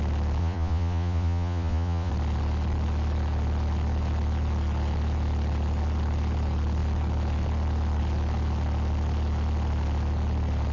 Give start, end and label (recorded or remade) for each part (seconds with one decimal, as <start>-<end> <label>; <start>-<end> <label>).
0.0-0.4 recorded; 0.4-2.1 remade; 2.1-10.7 recorded